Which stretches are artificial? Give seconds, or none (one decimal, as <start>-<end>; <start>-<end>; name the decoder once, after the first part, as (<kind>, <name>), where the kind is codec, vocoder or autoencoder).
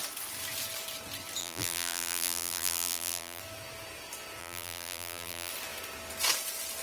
1.4-3.4 (vocoder, BigVGAN v2); 4.4-5.5